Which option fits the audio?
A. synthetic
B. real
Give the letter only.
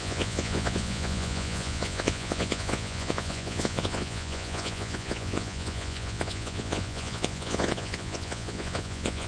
A